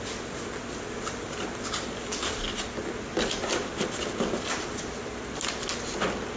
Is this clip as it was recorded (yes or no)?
yes